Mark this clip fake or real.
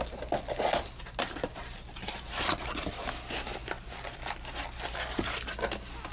real